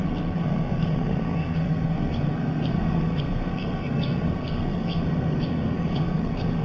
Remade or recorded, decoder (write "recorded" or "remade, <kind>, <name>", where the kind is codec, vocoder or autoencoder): remade, codec, SNAC